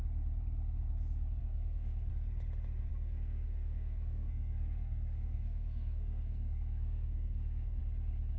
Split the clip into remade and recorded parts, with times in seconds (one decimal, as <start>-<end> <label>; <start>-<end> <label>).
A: 0.0-1.4 recorded; 1.4-2.1 remade; 2.1-2.9 recorded; 2.9-7.8 remade; 7.8-8.4 recorded